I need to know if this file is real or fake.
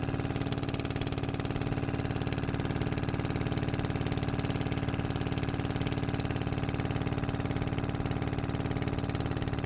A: real